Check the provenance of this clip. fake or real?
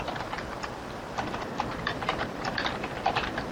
fake